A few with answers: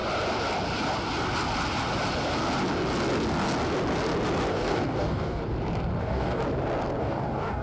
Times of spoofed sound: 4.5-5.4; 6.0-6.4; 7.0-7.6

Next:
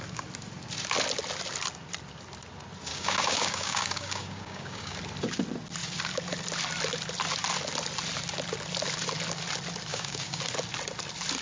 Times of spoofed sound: 2.9-5.0; 9.9-10.4

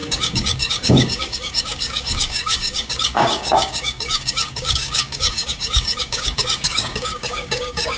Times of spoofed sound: 0.0-8.0

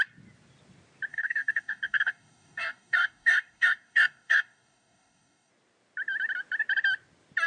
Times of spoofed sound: 1.1-5.5

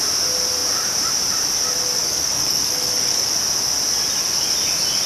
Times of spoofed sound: 2.0-3.3

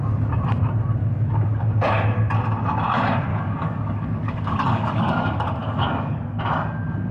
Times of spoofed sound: 1.0-1.7; 3.3-6.4

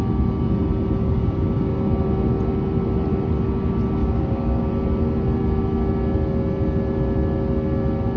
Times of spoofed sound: 1.0-1.7; 4.0-4.7